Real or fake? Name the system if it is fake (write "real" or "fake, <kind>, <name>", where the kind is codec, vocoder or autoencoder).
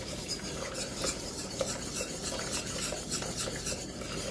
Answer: fake, vocoder, BigVGAN v2